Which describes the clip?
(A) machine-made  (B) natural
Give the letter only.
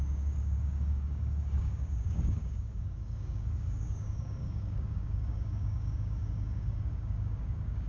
A